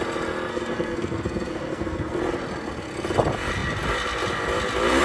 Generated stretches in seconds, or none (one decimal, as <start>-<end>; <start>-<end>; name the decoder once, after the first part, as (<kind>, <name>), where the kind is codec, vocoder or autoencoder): 0.5-2.2 (codec, SNAC)